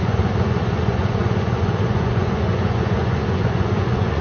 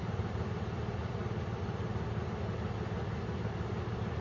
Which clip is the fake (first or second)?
first